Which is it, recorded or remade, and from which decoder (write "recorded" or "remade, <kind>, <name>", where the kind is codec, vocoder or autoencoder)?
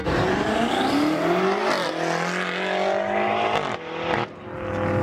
recorded